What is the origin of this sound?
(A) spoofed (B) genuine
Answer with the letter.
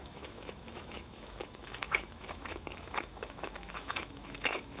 A